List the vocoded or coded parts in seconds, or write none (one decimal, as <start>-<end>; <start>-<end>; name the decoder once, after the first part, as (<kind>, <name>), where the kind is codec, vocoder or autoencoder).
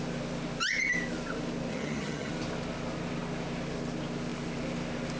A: 1.7-2.3 (vocoder, HiFi-GAN)